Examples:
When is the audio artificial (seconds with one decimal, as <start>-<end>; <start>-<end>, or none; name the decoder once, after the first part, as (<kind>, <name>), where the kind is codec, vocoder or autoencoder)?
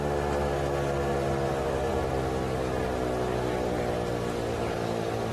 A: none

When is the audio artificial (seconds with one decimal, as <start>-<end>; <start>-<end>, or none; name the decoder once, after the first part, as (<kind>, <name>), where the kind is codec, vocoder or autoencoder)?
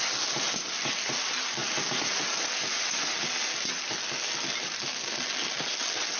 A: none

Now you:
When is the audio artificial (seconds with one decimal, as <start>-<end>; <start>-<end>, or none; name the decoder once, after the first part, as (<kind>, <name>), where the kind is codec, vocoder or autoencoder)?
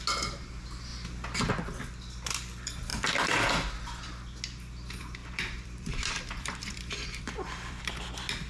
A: 2.9-3.5 (vocoder, BigVGAN v2); 5.2-7.8